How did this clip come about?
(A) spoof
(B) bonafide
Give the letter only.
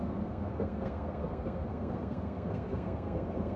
A